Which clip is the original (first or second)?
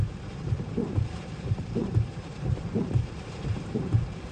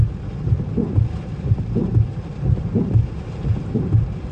second